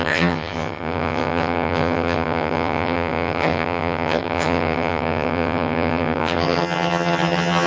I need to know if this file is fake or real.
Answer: fake